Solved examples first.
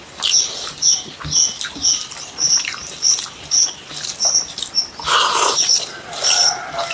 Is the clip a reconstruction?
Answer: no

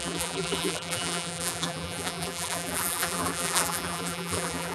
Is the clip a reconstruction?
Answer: yes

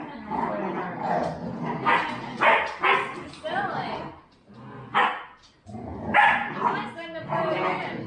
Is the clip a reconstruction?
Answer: no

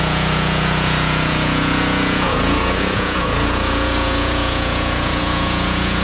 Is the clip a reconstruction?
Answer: yes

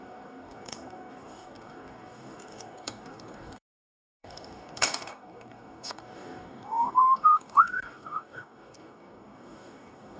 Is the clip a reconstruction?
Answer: yes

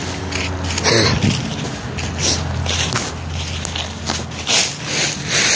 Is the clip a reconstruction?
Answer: no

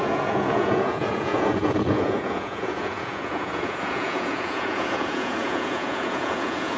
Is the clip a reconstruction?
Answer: yes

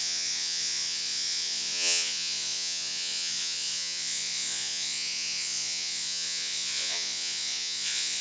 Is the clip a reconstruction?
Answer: yes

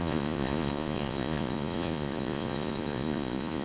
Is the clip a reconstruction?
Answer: yes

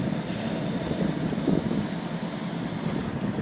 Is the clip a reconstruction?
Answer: no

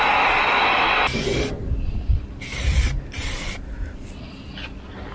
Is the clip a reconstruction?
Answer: no